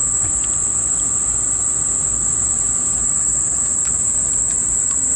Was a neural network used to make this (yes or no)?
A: no